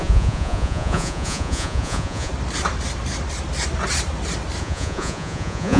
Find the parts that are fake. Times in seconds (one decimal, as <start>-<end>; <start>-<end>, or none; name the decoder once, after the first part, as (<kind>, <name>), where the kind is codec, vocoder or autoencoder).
0.0-2.3 (vocoder, Vocos); 4.6-5.8